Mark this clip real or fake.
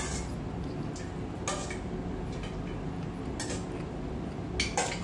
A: real